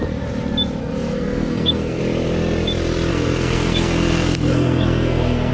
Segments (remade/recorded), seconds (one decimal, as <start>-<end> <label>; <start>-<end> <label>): 0.0-0.8 recorded; 0.8-2.0 remade; 2.0-3.1 recorded; 3.1-5.5 remade